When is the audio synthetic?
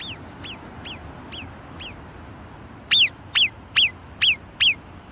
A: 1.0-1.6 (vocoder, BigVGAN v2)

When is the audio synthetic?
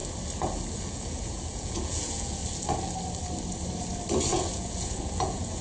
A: 0.8-2.4 (vocoder, Vocos); 4.3-5.6